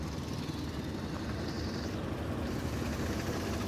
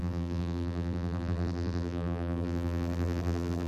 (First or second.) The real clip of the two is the first